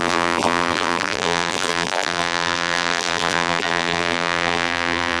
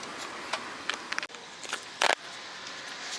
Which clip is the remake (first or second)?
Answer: first